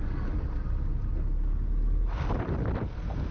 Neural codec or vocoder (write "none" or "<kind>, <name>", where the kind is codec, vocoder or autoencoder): none